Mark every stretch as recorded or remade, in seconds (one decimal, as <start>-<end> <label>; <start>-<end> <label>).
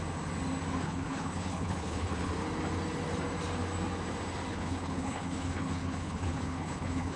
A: 0.0-0.8 recorded; 0.8-2.3 remade; 2.3-4.5 recorded; 4.5-7.2 remade